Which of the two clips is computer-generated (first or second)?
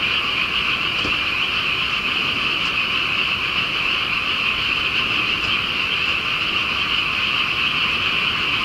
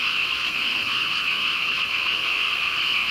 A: second